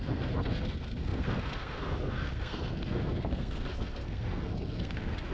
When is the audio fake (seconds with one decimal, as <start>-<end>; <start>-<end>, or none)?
0.0-5.3

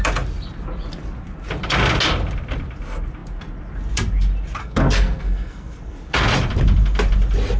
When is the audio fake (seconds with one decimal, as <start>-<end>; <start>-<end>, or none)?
4.6-6.1

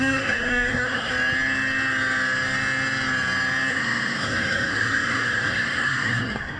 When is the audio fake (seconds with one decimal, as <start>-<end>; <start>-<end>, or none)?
0.0-1.1; 3.7-6.6